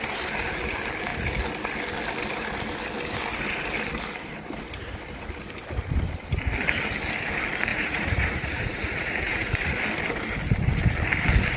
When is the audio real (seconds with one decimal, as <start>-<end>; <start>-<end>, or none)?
0.0-7.7; 9.8-11.6

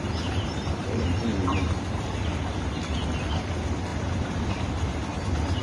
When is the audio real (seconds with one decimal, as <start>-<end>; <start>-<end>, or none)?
0.0-0.8; 2.1-3.9; 4.5-5.6

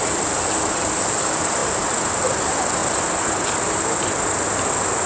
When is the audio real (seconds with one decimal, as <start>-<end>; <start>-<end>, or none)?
1.6-2.2; 2.8-5.1